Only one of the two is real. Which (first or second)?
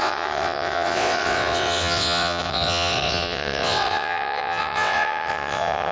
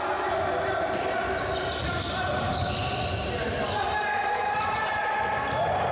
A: second